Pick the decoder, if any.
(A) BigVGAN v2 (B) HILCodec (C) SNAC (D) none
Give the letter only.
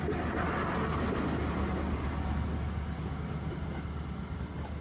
D